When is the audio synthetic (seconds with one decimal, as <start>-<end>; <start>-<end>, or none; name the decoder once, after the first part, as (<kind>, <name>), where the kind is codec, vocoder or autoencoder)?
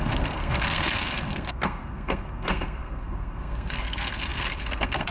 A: 0.0-5.1 (codec, SNAC)